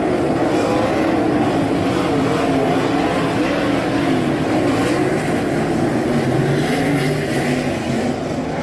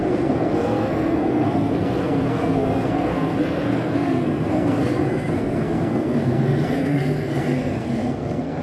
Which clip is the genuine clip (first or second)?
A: first